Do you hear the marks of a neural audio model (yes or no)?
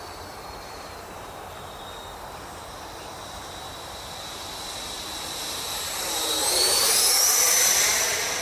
yes